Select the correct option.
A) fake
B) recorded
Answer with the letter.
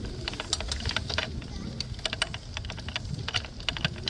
B